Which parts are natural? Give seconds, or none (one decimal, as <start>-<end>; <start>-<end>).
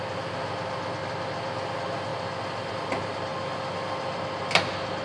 0.0-5.0